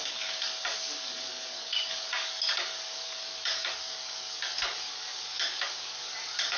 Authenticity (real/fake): fake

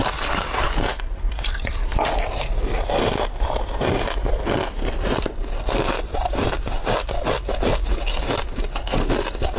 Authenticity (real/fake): real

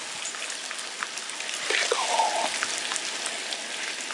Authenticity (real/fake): real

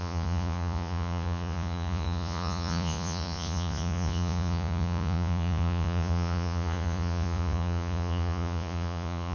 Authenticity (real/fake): fake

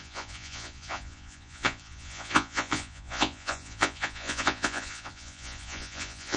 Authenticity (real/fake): fake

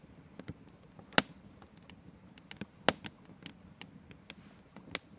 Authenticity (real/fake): real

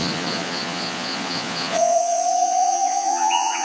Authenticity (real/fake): fake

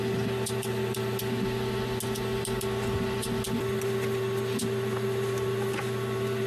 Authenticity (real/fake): real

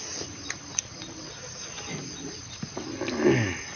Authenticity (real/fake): real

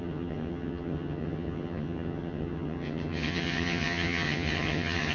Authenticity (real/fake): fake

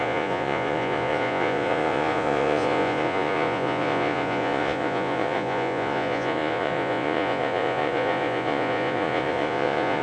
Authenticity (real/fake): fake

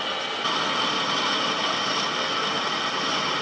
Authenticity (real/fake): real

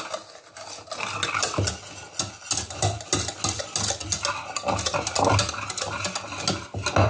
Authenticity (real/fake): real